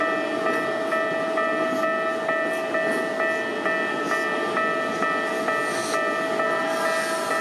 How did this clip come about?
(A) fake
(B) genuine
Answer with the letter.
B